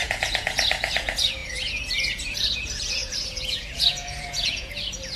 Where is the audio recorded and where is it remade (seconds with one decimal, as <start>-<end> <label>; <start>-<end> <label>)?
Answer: 0.0-5.2 remade